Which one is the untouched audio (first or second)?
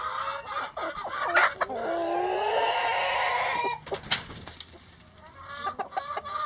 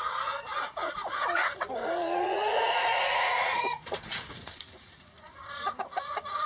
first